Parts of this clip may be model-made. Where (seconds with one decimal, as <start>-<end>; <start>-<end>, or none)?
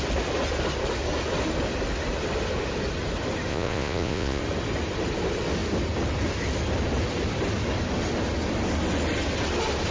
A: 3.5-4.4